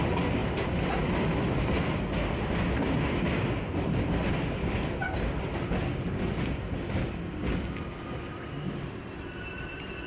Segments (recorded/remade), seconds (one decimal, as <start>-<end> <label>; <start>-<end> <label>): 0.0-10.1 recorded